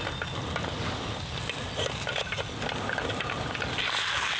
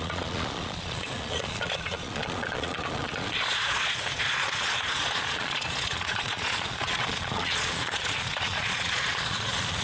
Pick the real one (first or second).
first